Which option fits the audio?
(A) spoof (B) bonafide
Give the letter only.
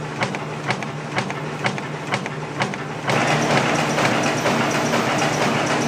B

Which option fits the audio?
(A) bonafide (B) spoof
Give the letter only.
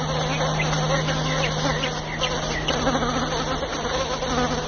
A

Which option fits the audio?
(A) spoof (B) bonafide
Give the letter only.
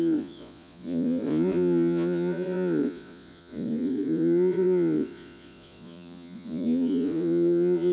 A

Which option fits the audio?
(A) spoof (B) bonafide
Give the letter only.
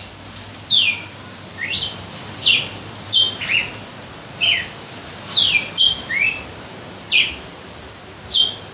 B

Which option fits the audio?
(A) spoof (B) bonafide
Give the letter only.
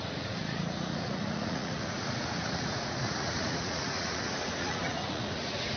A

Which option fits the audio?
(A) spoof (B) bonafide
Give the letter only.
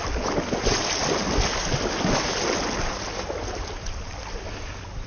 B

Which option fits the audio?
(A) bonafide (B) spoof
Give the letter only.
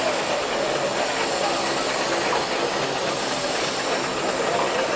A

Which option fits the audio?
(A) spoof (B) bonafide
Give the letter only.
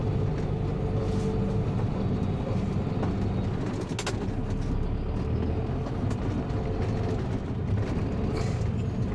B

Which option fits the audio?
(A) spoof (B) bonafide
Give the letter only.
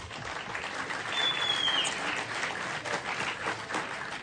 B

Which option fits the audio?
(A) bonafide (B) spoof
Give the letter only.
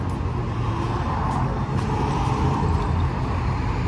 A